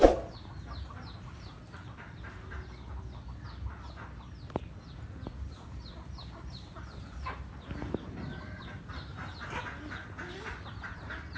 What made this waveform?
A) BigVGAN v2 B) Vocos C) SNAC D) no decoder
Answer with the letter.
D